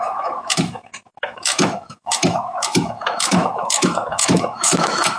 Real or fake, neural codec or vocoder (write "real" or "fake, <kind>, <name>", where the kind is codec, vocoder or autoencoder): fake, autoencoder, DAC-VAE